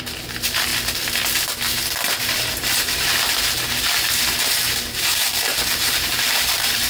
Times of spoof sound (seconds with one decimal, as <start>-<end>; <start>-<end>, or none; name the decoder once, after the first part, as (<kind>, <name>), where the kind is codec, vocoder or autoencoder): 0.0-0.7 (vocoder, BigVGAN v2); 2.2-6.9